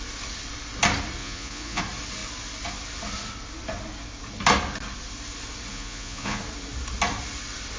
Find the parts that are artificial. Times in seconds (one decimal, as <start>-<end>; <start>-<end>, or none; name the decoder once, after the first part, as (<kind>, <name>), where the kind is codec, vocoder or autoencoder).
1.2-1.8 (vocoder, Vocos); 5.7-6.4